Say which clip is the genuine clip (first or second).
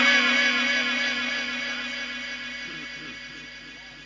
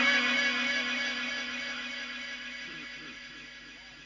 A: first